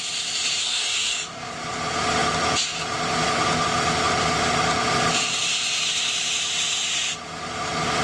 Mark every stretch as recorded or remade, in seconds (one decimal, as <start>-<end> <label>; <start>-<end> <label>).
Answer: 0.0-0.6 recorded; 0.6-1.5 remade; 1.5-8.0 recorded